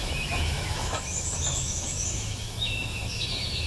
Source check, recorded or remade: remade